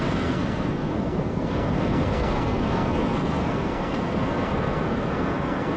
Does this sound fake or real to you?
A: fake